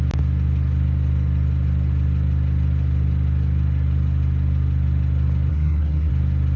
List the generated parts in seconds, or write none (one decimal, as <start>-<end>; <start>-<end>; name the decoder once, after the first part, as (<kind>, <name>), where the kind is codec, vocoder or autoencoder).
5.5-6.1 (codec, SNAC)

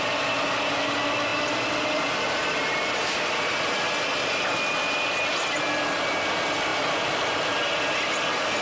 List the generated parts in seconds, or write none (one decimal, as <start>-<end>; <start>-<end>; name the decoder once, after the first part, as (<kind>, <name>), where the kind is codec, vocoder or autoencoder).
6.7-7.3 (vocoder, BigVGAN v2)

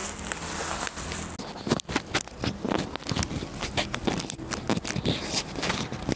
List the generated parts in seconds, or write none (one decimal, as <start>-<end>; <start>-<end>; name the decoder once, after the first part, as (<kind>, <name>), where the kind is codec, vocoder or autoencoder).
none

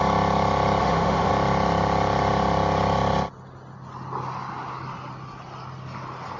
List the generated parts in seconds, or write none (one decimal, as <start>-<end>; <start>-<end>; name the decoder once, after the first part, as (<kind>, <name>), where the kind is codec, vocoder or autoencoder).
0.8-1.3 (autoencoder, DAC-VAE)

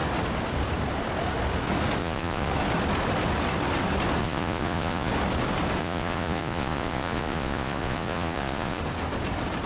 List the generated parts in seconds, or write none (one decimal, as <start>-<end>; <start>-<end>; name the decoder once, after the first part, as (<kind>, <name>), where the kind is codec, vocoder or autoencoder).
2.0-2.5 (vocoder, Vocos); 4.2-5.1; 5.8-8.8

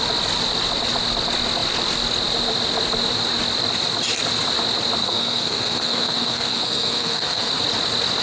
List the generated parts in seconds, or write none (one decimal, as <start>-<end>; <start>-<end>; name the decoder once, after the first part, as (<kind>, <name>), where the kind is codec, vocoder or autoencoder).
5.0-7.5 (codec, SNAC)

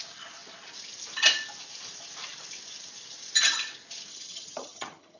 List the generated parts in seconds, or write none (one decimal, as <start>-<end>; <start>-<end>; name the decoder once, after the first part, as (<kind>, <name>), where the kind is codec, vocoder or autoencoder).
4.1-5.2 (vocoder, HiFi-GAN)

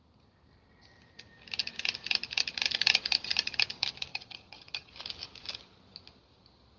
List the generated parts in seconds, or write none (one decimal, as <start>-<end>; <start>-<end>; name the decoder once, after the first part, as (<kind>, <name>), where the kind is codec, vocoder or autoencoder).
4.1-4.9 (vocoder, HiFi-GAN)